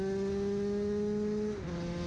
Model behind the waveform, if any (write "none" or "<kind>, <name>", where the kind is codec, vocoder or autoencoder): none